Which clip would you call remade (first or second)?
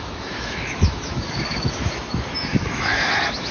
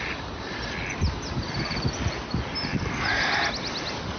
first